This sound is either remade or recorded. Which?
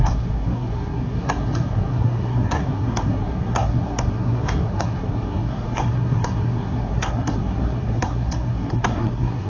remade